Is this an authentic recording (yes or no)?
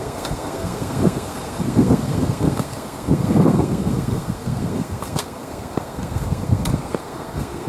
no